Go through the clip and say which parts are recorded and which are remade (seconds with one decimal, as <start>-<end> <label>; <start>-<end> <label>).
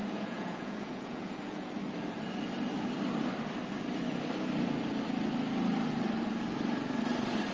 0.0-1.7 remade; 1.7-7.5 recorded